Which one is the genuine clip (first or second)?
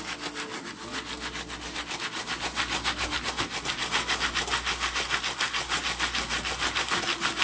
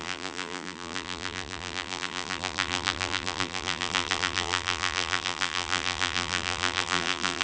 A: first